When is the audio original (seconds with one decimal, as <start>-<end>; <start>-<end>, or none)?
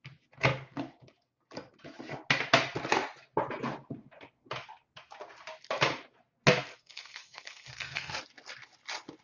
0.0-6.7; 8.2-9.2